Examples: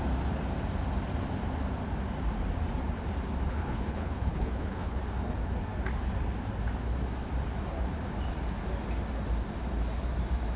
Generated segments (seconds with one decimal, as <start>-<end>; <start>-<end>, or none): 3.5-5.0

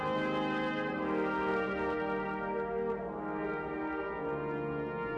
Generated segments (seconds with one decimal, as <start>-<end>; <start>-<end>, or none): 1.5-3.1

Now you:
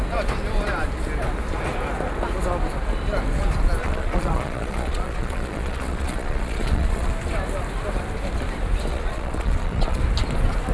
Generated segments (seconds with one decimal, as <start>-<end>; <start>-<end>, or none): 3.8-7.1; 8.9-10.0

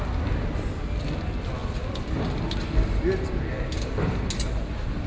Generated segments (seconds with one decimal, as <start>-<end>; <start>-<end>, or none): none

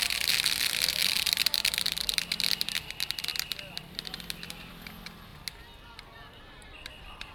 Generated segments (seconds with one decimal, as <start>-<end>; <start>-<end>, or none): 1.0-2.9

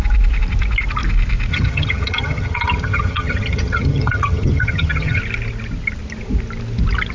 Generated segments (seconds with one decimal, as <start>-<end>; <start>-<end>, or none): 1.5-5.2